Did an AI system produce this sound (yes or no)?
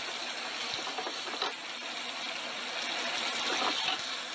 no